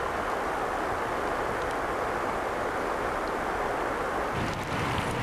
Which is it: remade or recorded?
recorded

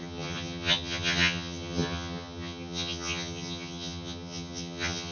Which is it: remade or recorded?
remade